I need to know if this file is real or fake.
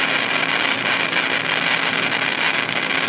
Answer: real